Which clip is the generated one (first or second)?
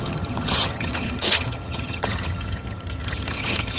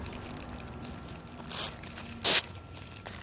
first